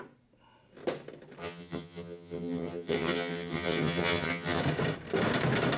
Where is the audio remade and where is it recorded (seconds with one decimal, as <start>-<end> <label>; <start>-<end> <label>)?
0.0-1.4 recorded; 1.4-4.6 remade; 4.6-5.8 recorded